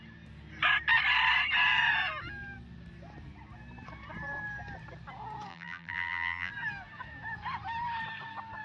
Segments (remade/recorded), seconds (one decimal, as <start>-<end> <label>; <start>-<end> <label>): 0.0-5.5 recorded; 5.5-6.5 remade; 6.5-8.6 recorded